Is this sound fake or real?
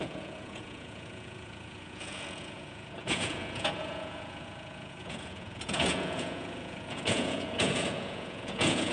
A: fake